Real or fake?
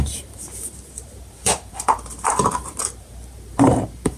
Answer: fake